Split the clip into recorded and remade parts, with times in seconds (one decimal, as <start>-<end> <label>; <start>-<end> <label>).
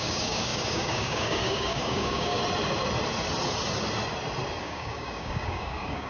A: 0.0-2.4 remade; 2.4-4.6 recorded; 4.6-6.1 remade